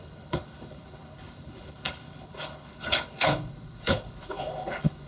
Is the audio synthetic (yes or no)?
yes